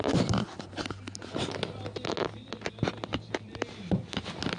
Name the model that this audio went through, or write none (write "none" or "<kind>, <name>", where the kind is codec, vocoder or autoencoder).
none